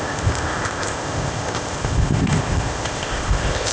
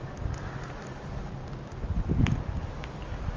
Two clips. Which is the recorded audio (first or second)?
second